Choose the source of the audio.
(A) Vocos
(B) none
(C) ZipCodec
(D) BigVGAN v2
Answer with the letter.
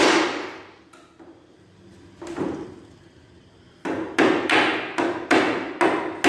B